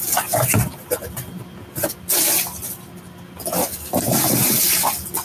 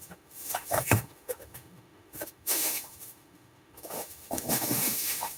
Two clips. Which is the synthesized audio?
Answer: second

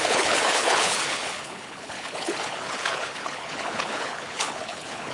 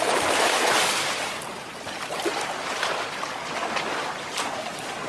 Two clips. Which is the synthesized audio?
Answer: first